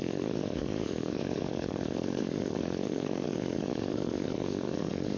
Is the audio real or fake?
fake